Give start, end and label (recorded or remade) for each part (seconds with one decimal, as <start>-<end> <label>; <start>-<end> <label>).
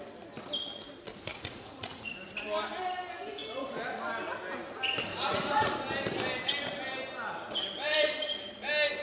0.0-1.3 recorded; 1.3-2.3 remade; 2.3-5.1 recorded; 5.1-5.7 remade; 5.7-9.0 recorded